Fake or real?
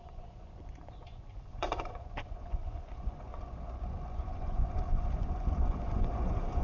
fake